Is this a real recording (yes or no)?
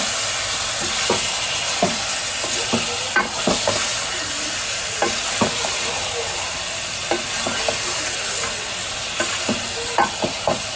yes